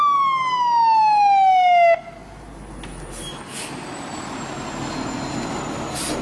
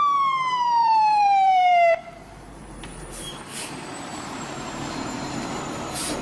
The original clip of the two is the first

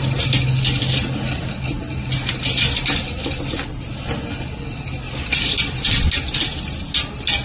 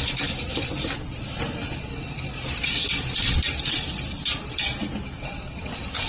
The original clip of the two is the first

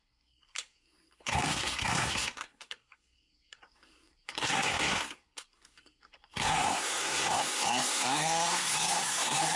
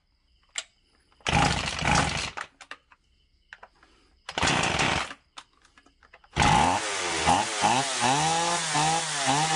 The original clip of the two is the second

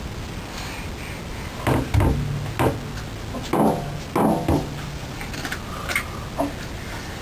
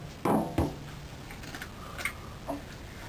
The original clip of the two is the first